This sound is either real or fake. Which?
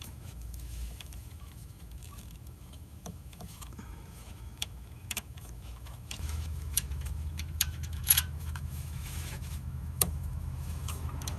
fake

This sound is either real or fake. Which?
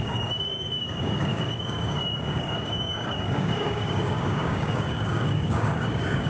fake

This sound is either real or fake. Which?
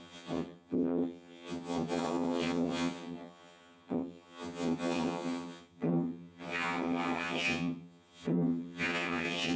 fake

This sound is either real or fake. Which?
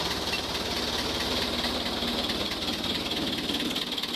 real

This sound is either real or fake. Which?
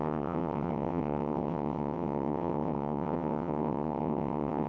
fake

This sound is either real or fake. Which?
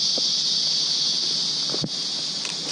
real